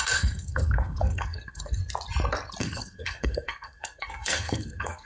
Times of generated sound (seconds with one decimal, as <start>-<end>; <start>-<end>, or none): 0.0-1.8; 2.6-5.1